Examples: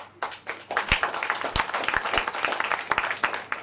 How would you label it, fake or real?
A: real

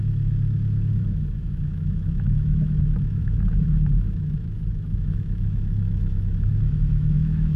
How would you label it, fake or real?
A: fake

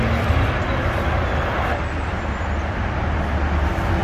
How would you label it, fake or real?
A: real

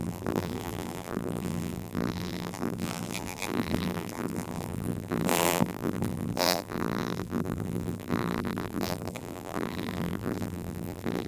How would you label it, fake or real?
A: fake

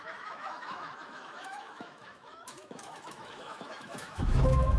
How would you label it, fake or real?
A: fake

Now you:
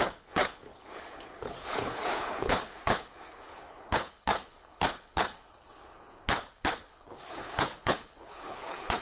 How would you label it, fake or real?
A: fake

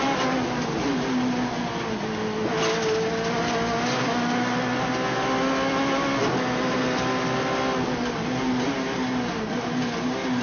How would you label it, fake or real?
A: real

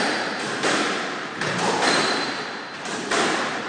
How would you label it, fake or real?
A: fake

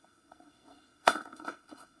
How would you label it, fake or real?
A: fake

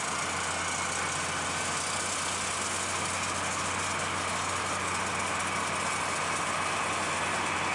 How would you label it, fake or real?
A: real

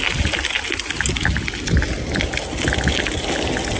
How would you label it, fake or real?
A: real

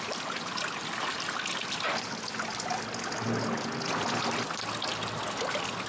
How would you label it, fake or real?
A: real